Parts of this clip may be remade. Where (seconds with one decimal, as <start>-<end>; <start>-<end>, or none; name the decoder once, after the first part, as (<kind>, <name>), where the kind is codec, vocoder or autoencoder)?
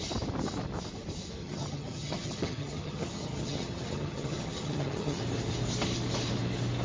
1.4-5.2 (vocoder, HiFi-GAN)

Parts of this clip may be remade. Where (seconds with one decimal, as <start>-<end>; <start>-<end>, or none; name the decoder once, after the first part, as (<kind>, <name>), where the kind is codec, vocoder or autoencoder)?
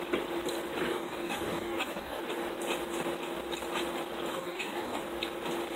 0.9-2.2 (codec, DAC); 4.3-5.0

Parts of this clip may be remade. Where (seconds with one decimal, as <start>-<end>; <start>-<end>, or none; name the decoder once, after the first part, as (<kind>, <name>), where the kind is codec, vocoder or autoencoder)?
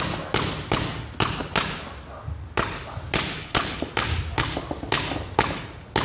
3.4-3.9 (codec, HILCodec)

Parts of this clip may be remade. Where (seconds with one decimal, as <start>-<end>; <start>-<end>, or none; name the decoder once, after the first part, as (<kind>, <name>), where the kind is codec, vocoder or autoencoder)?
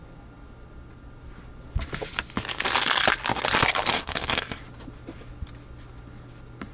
3.9-4.6 (codec, SNAC)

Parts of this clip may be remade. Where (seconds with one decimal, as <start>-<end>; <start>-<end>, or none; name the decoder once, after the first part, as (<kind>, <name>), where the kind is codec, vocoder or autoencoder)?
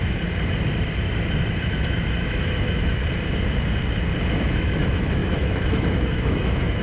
1.6-3.0 (autoencoder, DAC-VAE); 4.3-6.8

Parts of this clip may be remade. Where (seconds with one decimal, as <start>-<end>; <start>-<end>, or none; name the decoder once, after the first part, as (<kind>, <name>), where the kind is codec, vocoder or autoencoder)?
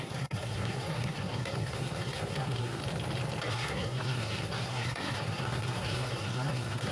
0.0-2.8 (codec, SNAC); 3.5-6.9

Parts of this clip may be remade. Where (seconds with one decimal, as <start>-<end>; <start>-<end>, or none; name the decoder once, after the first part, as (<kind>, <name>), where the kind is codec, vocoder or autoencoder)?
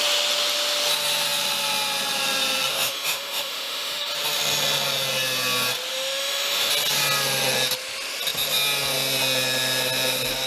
2.7-4.1 (autoencoder, DAC-VAE); 5.9-6.7